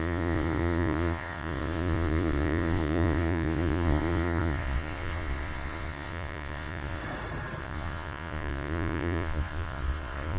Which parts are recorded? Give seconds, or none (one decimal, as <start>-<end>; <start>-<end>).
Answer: 7.0-7.6